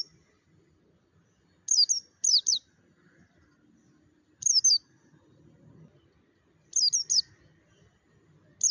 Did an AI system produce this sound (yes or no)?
no